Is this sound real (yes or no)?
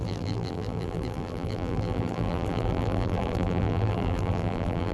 no